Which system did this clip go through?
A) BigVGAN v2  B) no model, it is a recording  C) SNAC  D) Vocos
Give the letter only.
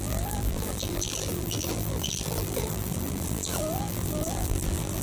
A